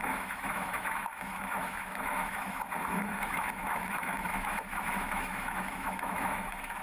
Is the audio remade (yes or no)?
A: yes